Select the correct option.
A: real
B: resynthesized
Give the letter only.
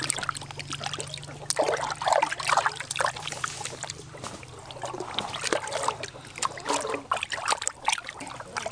A